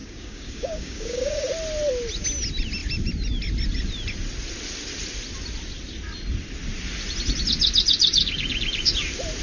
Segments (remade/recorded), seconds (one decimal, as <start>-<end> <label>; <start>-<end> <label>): 0.0-1.5 remade; 1.5-9.4 recorded